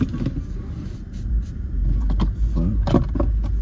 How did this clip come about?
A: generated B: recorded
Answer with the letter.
B